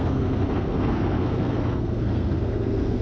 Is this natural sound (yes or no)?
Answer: no